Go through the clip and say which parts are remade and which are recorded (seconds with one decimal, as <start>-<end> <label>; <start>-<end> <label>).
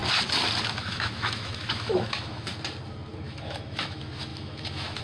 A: 0.0-0.8 recorded; 0.8-2.5 remade; 2.5-3.2 recorded; 3.2-5.0 remade